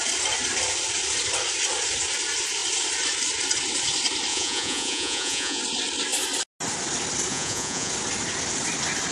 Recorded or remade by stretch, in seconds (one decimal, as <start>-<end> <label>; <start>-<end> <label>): 0.0-4.3 recorded; 4.3-5.6 remade; 5.6-7.3 recorded; 7.3-7.9 remade; 7.9-9.1 recorded